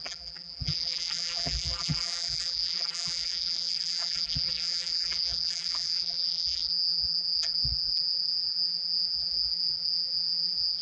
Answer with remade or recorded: remade